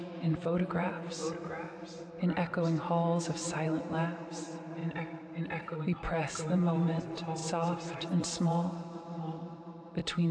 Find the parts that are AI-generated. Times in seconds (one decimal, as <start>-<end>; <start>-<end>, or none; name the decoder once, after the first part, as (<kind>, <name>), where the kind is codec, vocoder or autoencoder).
0.0-1.2 (vocoder, BigVGAN v2); 3.2-10.3